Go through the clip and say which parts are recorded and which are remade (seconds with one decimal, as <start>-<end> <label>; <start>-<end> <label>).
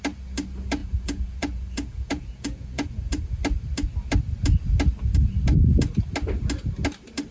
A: 0.0-0.8 recorded; 0.8-3.3 remade; 3.3-7.3 recorded